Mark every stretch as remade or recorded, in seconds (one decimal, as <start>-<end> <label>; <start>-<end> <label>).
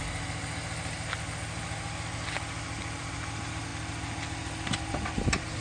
0.0-5.6 recorded